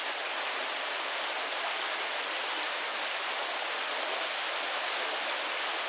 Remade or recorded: recorded